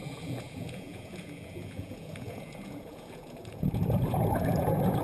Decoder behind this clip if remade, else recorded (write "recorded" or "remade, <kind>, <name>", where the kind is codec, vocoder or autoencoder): remade, vocoder, Vocos